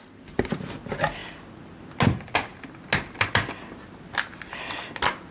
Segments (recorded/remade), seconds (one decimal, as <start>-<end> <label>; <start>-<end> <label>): 0.0-5.3 recorded